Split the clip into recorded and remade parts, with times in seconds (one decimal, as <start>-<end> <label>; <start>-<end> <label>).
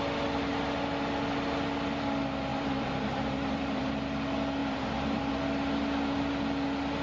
0.0-2.5 recorded; 2.5-3.9 remade; 3.9-4.6 recorded; 4.6-5.3 remade; 5.3-7.0 recorded